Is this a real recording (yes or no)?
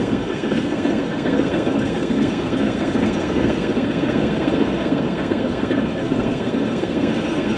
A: no